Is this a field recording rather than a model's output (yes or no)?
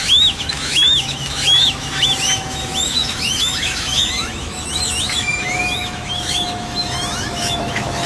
no